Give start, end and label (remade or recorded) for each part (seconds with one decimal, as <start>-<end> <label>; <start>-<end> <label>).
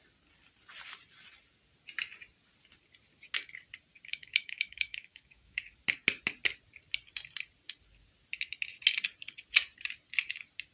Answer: 0.0-4.1 recorded; 4.1-5.6 remade; 5.6-10.7 recorded